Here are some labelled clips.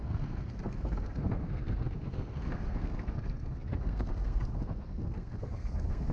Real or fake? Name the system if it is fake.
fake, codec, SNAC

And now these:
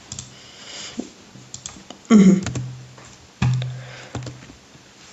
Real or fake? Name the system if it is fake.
real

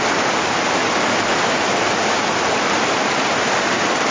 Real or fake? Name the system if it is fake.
real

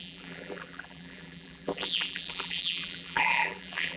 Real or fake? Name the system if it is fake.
fake, vocoder, BigVGAN v2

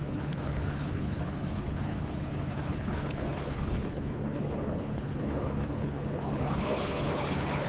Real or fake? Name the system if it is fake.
fake, codec, HILCodec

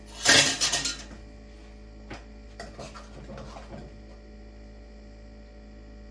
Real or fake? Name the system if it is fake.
real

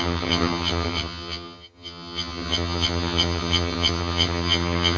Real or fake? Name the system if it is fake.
fake, vocoder, HiFi-GAN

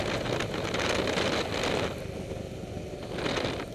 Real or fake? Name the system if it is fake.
real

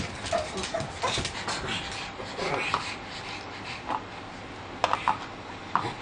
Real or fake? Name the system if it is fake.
real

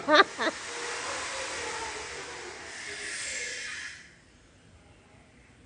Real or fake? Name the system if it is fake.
real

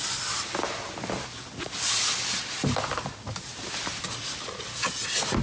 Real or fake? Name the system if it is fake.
real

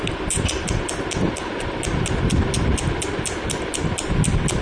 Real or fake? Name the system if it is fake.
real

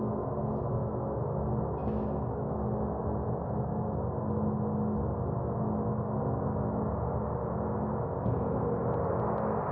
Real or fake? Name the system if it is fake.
real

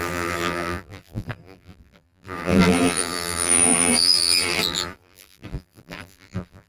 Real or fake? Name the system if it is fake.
fake, vocoder, BigVGAN v2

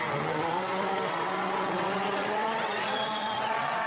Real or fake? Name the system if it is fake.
fake, vocoder, WaveNeXt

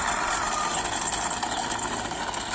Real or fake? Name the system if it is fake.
real